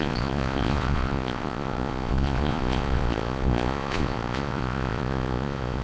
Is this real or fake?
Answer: fake